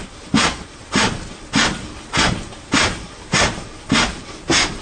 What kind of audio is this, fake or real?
real